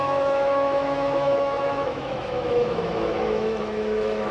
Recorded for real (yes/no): no